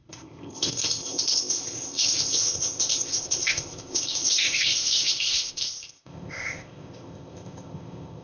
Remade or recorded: remade